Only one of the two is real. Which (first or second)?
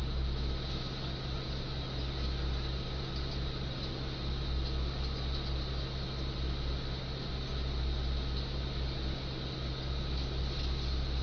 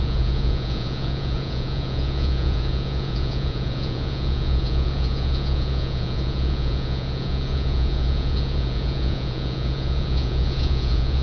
first